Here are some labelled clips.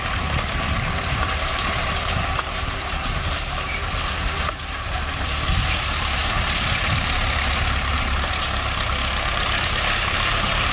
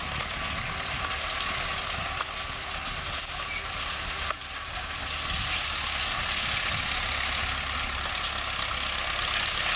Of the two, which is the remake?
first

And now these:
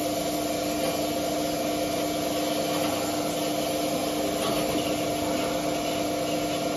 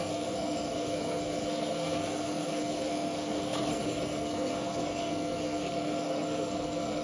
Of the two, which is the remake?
second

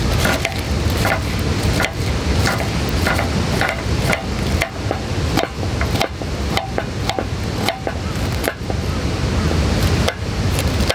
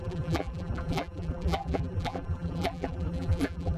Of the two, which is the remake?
second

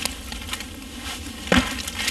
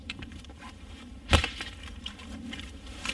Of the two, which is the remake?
second